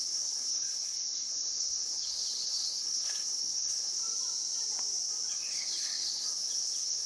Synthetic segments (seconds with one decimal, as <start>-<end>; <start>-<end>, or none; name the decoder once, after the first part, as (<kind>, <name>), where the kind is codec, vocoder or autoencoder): 0.0-4.0 (codec, HILCodec); 5.3-7.1